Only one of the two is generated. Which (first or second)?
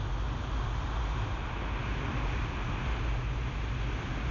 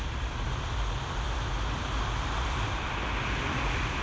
second